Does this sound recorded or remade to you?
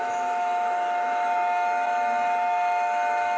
remade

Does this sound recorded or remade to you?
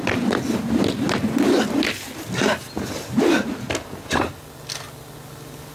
recorded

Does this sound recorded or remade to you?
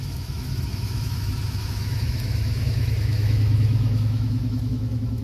remade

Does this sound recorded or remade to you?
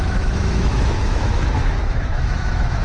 remade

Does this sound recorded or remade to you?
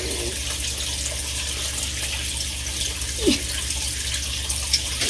recorded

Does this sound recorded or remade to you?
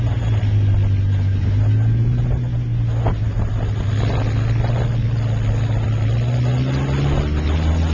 recorded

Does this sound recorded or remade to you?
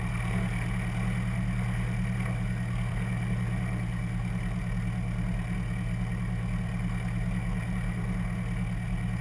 recorded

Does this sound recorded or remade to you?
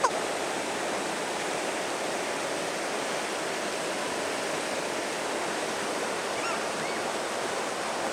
recorded